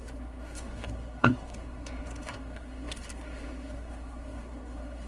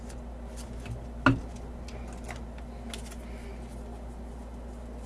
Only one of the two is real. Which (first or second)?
second